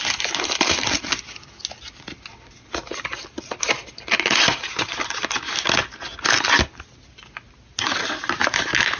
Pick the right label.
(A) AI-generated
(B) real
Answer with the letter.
B